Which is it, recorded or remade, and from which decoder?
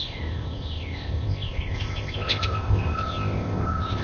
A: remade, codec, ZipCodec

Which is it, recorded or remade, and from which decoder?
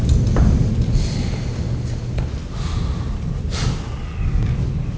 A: recorded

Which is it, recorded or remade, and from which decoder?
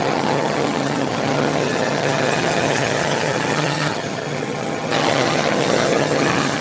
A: remade, vocoder, HiFi-GAN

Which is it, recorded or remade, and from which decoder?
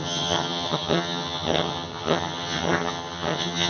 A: remade, vocoder, HiFi-GAN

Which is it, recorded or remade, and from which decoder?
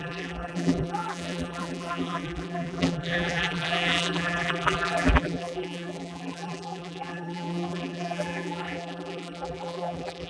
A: remade, vocoder, BigVGAN v2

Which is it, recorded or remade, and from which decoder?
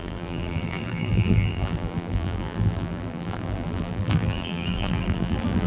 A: remade, vocoder, BigVGAN v2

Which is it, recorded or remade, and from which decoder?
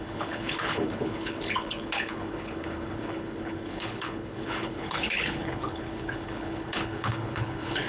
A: remade, codec, HILCodec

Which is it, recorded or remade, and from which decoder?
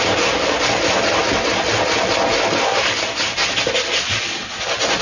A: recorded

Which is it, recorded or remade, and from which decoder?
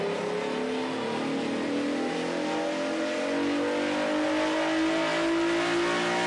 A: recorded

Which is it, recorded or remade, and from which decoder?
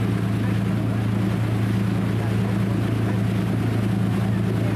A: recorded